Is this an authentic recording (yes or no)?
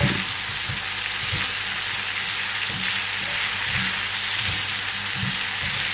yes